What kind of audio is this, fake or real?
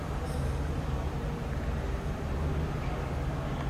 real